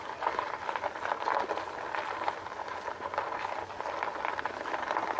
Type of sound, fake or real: real